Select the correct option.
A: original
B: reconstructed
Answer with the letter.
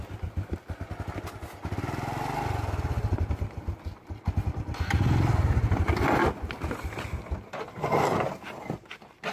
A